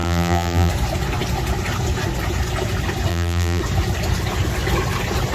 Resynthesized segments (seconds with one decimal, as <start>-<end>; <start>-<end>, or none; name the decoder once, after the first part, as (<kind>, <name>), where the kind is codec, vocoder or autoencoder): 0.0-0.7 (vocoder, BigVGAN v2); 3.1-3.6